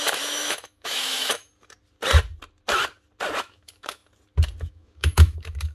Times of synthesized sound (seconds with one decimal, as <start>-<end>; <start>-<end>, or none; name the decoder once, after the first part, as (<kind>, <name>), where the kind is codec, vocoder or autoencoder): 0.0-1.5 (autoencoder, DAC-VAE); 3.4-4.0; 4.6-5.7